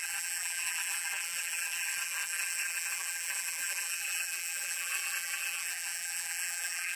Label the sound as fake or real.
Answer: fake